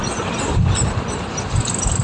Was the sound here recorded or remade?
recorded